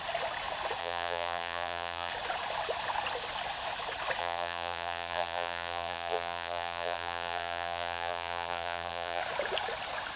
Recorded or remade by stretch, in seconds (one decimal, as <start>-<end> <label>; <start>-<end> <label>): 0.0-0.8 recorded; 0.8-2.1 remade; 2.1-4.2 recorded; 4.2-9.2 remade; 9.2-10.2 recorded

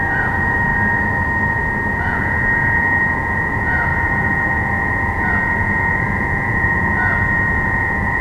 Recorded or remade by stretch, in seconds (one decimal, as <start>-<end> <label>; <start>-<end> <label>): 0.0-0.7 remade; 0.7-1.9 recorded; 1.9-8.2 remade

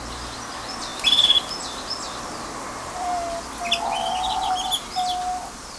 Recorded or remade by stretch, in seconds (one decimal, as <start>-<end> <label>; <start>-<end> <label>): 0.0-5.8 recorded

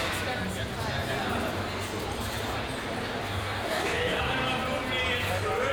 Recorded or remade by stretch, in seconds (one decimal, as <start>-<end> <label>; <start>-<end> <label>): 0.0-3.2 recorded; 3.2-4.2 remade; 4.2-5.7 recorded

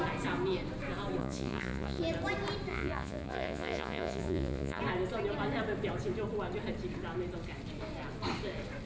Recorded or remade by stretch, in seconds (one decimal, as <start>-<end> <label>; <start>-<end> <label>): 0.0-1.2 recorded; 1.2-2.0 remade; 2.0-2.7 recorded; 2.7-4.8 remade; 4.8-8.9 recorded

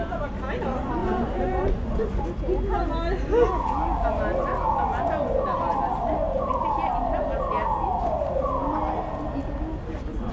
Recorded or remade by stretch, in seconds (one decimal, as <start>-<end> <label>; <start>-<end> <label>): 0.0-1.0 recorded; 1.0-2.2 remade; 2.2-10.3 recorded

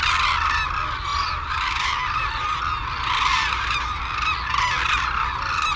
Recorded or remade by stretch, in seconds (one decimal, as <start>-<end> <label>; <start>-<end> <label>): 0.0-1.1 recorded; 1.1-2.6 remade; 2.6-3.3 recorded; 3.3-4.0 remade; 4.0-5.8 recorded

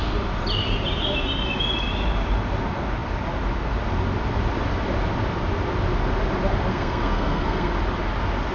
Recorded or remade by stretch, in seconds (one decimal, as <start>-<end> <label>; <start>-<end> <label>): 0.0-6.7 recorded; 6.7-7.7 remade; 7.7-8.5 recorded